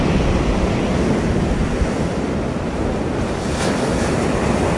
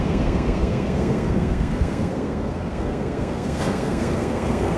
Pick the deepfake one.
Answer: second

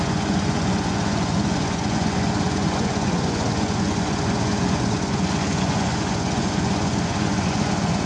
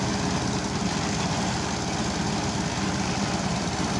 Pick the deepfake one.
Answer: first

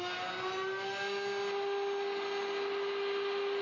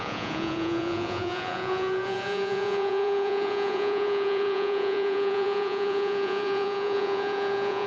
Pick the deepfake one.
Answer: second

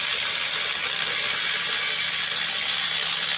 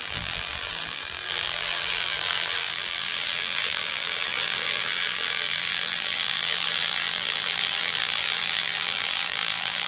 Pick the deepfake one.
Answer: second